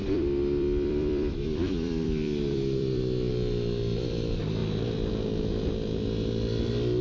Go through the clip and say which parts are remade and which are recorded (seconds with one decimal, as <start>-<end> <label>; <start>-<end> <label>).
0.0-3.3 remade; 3.3-7.0 recorded